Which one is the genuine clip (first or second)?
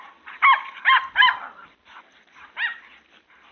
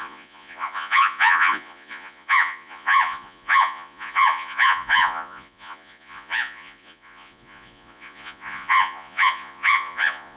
first